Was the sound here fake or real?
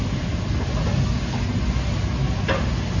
real